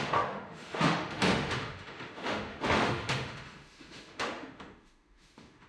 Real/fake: fake